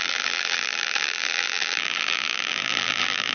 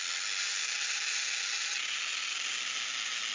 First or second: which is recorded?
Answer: second